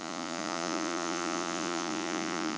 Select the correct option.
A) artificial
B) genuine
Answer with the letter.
A